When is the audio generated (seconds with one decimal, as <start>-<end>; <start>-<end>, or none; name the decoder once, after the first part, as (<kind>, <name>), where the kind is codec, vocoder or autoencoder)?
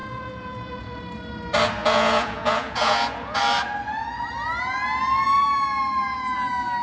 0.0-1.0 (vocoder, Vocos); 1.8-3.4